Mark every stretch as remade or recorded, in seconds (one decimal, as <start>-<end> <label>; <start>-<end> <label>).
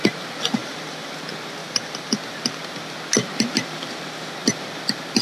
0.0-0.6 recorded; 0.6-1.1 remade; 1.1-1.6 recorded; 1.6-2.1 remade; 2.1-5.2 recorded